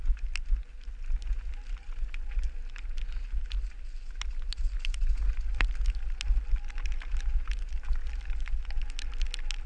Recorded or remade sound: recorded